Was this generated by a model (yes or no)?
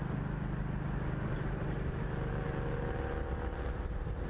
no